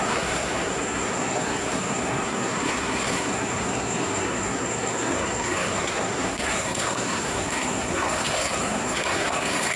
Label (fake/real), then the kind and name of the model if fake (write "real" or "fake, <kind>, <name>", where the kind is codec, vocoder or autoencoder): fake, codec, SNAC